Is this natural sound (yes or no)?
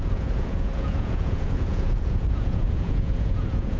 no